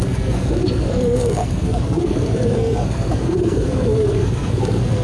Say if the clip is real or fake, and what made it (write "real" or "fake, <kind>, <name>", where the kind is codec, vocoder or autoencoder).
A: fake, codec, SNAC